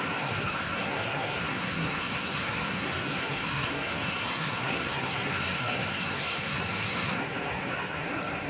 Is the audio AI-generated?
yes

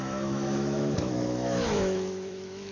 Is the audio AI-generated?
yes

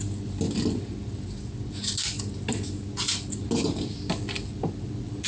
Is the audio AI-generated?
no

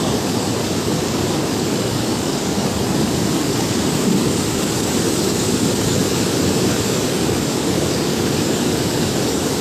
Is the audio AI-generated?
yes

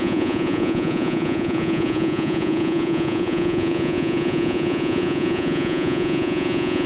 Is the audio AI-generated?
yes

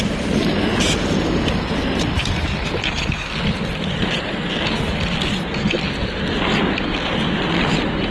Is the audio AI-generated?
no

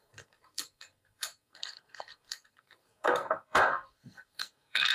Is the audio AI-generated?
yes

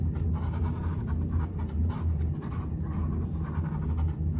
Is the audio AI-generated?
no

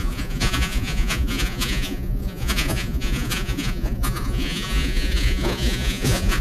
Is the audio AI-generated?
yes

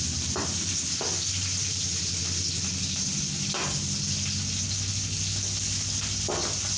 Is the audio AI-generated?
no